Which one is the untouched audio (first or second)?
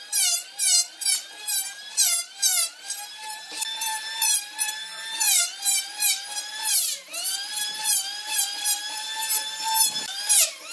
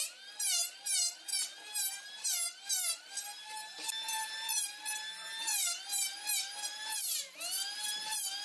second